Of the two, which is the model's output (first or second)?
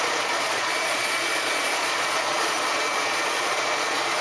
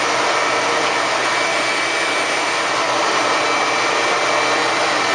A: first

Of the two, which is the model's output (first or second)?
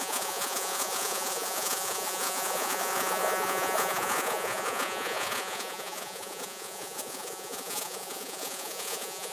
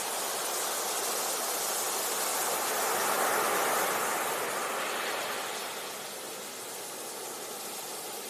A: first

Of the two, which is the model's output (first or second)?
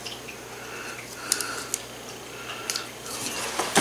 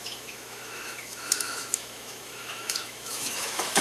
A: second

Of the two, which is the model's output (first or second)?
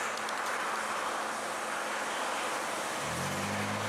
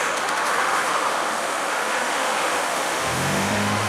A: second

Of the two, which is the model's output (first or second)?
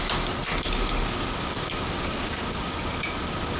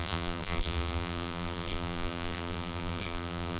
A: second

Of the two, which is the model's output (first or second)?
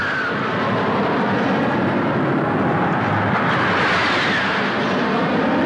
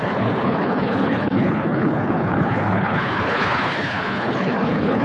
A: second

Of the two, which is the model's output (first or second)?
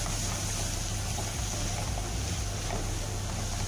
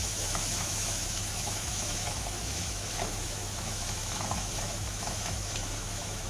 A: second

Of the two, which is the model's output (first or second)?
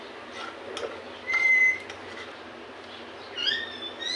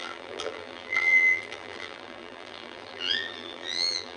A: second